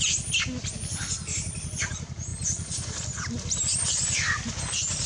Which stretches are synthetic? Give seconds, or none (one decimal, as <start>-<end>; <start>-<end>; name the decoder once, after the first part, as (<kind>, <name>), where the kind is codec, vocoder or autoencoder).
none